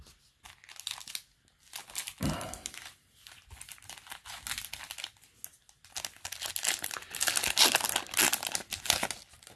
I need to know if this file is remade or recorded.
recorded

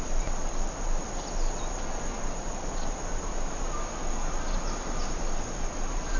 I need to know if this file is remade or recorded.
recorded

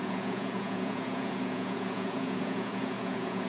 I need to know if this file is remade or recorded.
remade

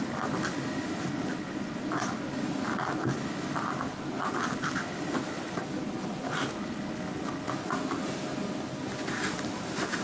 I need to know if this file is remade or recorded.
recorded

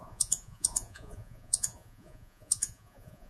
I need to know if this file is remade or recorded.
remade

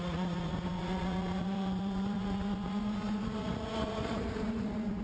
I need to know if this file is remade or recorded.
remade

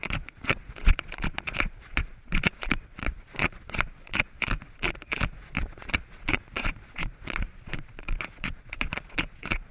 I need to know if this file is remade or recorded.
remade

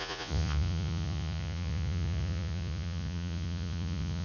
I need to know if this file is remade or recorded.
remade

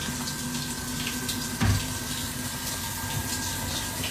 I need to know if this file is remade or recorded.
recorded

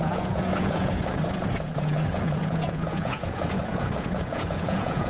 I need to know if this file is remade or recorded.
remade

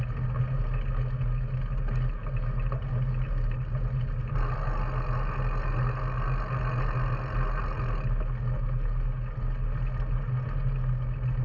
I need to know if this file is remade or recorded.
recorded